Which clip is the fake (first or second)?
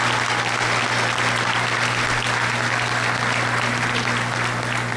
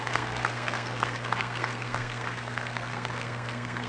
second